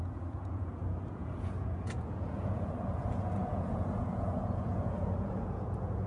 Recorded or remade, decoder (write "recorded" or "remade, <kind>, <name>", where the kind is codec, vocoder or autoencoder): remade, vocoder, Vocos